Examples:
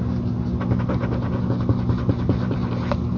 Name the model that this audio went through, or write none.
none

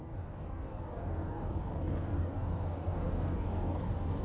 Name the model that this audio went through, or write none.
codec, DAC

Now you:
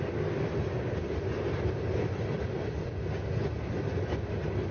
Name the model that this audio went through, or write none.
none